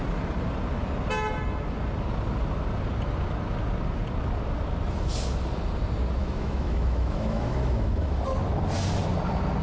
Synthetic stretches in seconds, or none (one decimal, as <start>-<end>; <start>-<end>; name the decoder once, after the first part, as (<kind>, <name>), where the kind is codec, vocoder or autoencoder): 6.2-8.2 (autoencoder, DAC-VAE)